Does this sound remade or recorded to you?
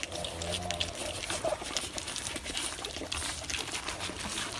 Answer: recorded